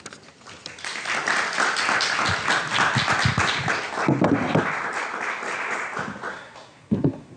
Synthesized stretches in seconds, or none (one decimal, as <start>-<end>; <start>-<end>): 6.3-7.4